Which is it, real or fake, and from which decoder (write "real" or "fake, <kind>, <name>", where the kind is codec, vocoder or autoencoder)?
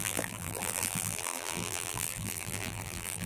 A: fake, vocoder, BigVGAN v2